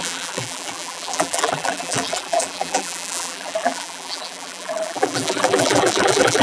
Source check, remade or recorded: remade